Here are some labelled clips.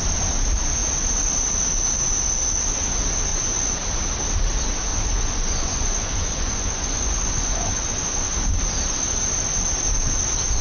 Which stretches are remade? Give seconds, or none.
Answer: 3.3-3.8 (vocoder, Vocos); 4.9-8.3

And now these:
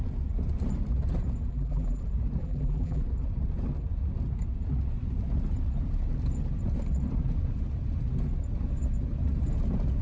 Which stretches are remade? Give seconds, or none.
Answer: 1.5-2.0 (vocoder, BigVGAN v2); 2.4-3.0